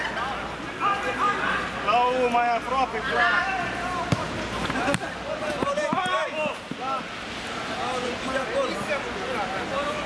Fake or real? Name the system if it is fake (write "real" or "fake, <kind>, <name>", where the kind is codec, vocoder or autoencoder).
real